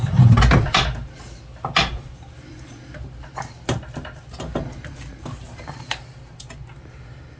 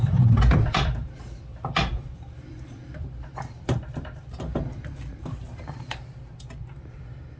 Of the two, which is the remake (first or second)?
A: second